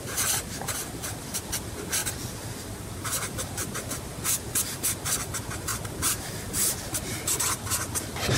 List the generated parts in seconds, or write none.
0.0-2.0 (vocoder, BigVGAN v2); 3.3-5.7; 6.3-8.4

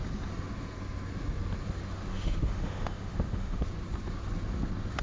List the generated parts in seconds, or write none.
2.1-3.6 (autoencoder, DAC-VAE)

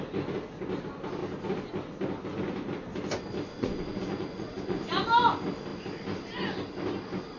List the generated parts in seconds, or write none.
3.5-4.8 (vocoder, Vocos)

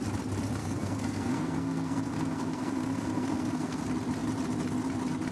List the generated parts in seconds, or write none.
0.6-3.8 (codec, SNAC)

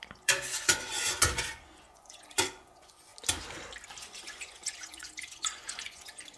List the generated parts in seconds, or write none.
0.0-3.1 (vocoder, Vocos); 4.0-6.4

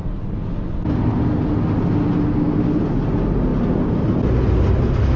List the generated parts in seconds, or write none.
none